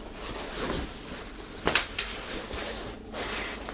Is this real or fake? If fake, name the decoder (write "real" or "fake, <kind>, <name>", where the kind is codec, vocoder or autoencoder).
real